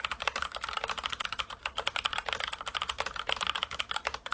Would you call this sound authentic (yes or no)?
no